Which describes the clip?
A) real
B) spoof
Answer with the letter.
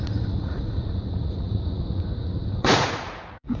B